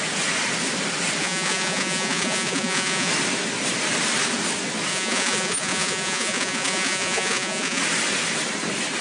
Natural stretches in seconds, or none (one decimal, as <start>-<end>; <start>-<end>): 0.0-1.2; 3.1-4.9; 7.8-9.0